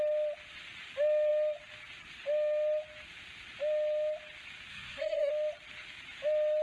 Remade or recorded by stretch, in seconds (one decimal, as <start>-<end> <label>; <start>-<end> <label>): 0.0-4.7 recorded; 4.7-5.3 remade; 5.3-6.6 recorded